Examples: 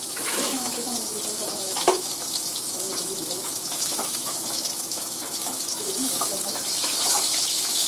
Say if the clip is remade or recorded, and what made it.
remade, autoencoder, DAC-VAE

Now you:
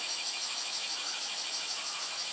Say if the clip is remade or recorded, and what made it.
remade, autoencoder, DAC-VAE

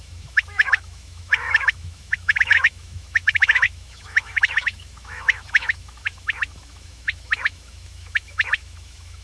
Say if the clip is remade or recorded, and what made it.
remade, autoencoder, DAC-VAE